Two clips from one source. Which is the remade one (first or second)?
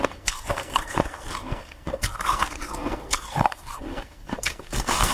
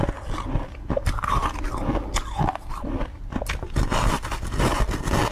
first